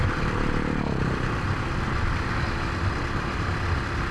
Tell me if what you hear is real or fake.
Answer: real